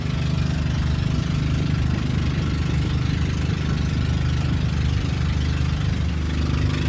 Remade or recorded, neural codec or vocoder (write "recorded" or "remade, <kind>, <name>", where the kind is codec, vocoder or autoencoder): recorded